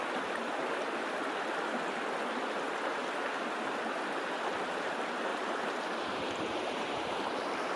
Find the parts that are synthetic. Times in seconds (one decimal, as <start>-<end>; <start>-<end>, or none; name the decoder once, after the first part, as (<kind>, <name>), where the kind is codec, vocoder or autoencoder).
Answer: 5.3-7.2 (vocoder, BigVGAN v2)